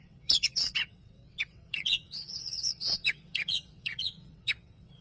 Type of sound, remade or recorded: remade